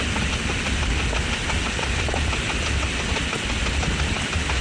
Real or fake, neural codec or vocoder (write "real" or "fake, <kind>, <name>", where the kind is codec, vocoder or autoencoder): real